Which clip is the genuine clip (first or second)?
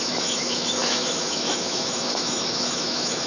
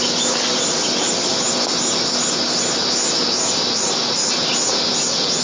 second